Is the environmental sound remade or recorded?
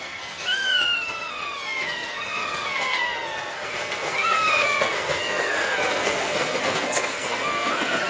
remade